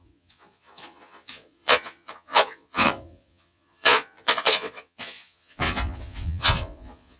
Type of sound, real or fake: fake